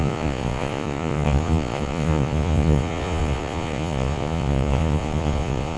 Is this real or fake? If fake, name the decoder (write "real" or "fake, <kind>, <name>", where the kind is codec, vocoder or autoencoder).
fake, vocoder, Vocos